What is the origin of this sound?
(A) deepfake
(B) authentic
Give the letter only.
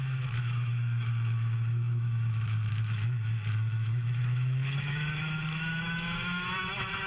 A